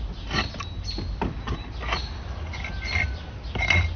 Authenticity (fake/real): real